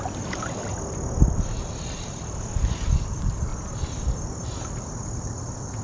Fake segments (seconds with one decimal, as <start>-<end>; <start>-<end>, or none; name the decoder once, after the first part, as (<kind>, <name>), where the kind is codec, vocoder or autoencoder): 0.0-0.7 (vocoder, BigVGAN v2); 1.3-3.5; 4.4-5.8